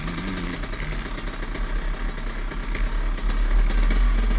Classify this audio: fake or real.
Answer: real